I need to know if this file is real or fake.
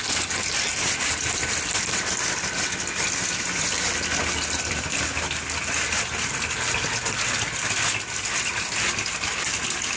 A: real